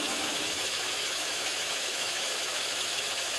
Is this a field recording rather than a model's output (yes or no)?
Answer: no